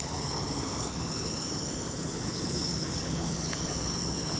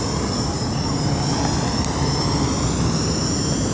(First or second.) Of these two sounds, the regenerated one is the first